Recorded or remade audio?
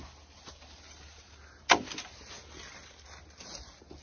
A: recorded